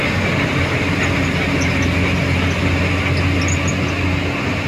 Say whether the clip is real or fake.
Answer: real